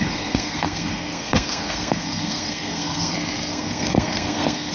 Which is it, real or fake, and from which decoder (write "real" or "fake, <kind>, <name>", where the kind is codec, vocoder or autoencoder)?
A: fake, codec, SNAC